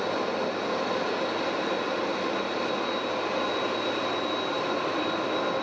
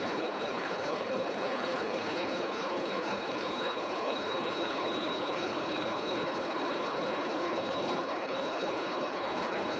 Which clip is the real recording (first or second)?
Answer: first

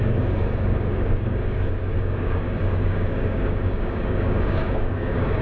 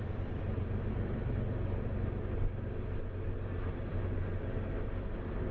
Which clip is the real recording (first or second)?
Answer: second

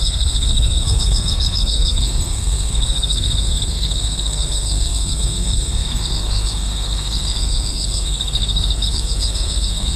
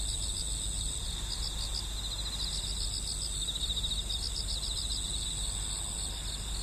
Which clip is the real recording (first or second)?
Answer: second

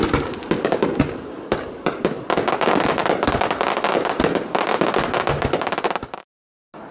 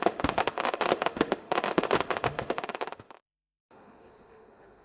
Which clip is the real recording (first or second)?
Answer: first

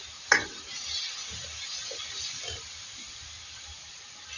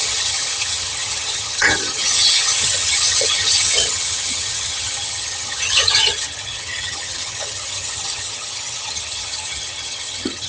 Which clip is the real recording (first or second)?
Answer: first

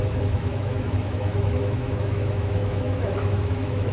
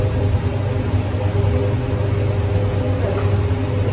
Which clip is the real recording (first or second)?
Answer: second